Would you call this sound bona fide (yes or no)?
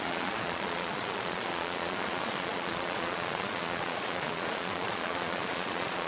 no